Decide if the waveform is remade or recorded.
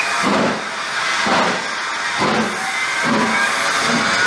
recorded